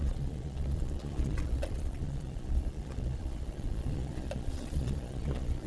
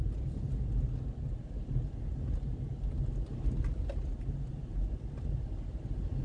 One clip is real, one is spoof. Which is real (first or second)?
second